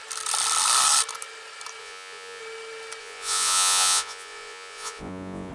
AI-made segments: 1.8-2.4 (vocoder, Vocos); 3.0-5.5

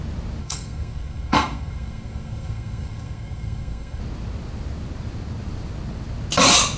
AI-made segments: 0.4-4.0 (codec, SNAC)

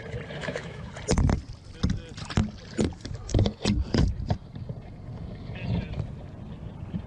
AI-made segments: 0.4-0.9 (autoencoder, DAC-VAE)

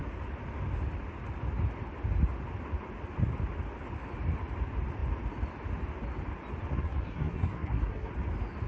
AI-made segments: 6.7-8.1 (codec, SNAC)

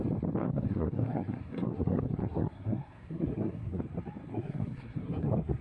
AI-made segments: 0.4-3.8 (codec, SNAC); 4.3-5.6

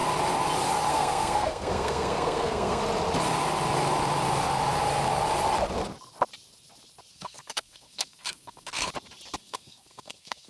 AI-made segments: 0.9-2.8 (codec, SNAC); 7.1-8.9; 9.4-10.5